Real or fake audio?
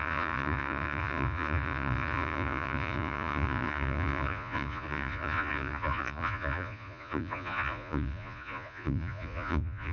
fake